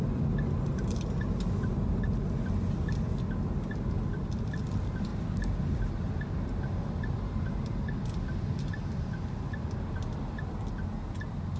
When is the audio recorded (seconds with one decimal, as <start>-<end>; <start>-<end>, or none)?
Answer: 0.0-11.6